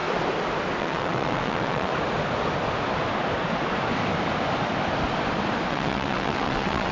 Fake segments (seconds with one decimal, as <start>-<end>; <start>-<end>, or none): 0.8-1.9; 5.7-6.9

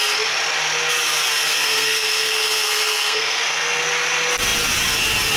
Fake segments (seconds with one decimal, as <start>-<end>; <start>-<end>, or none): 1.4-3.8

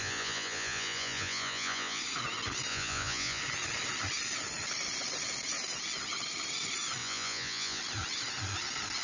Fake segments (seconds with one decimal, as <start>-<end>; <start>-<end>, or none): 0.0-2.0; 2.7-3.4; 7.0-7.8

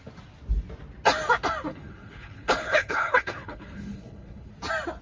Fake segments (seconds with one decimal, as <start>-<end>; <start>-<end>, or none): 1.7-4.5

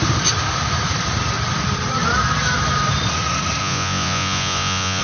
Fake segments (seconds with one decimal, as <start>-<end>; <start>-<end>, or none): 3.6-5.0

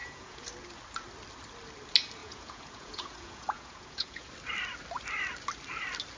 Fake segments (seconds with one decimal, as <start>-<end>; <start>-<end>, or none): 0.0-0.5; 2.2-4.3

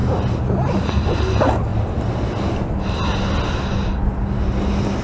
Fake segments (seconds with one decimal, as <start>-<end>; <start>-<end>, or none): 0.0-1.2